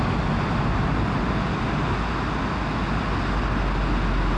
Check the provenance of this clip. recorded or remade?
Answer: recorded